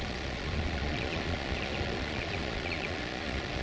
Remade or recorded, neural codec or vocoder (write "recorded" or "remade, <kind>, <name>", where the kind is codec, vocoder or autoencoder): remade, vocoder, Vocos